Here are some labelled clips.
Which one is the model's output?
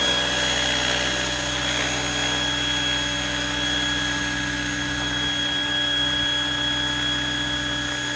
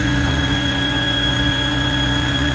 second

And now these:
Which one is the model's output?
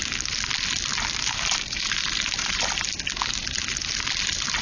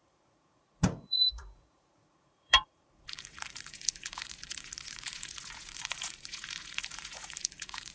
second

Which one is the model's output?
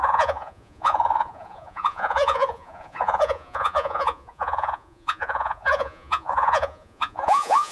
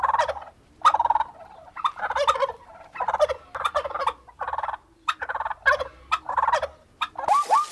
first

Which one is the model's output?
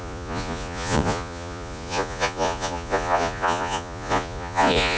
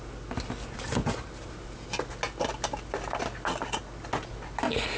first